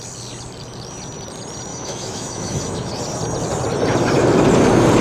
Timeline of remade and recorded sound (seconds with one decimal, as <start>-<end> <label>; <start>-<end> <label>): 0.0-1.7 recorded; 1.7-2.9 remade; 2.9-5.0 recorded